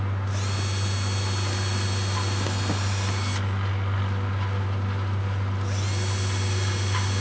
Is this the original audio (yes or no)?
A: yes